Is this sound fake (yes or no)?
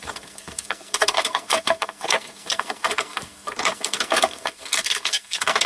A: yes